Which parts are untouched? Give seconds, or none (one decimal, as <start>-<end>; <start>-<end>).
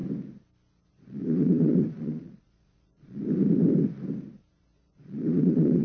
0.0-0.7; 3.2-4.5